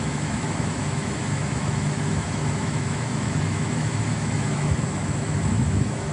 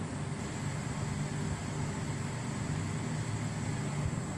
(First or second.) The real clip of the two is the second